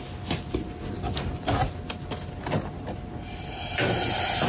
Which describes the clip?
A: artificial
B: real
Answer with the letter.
B